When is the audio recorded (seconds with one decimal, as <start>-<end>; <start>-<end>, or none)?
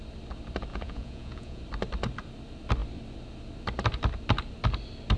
0.0-0.7; 1.6-5.2